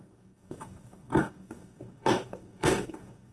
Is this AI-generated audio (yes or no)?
yes